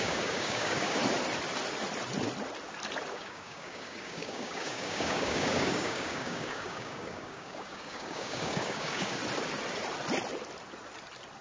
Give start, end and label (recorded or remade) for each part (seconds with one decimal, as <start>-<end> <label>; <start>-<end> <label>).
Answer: 0.0-1.0 remade; 1.0-3.1 recorded; 3.1-9.2 remade; 9.2-11.4 recorded